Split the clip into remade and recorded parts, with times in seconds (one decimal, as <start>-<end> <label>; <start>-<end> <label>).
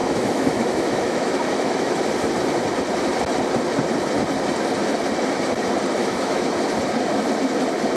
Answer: 0.0-2.0 remade; 2.0-6.0 recorded; 6.0-6.5 remade; 6.5-8.0 recorded